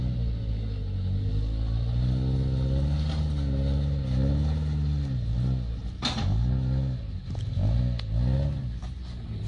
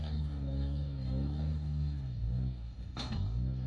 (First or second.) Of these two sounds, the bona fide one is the first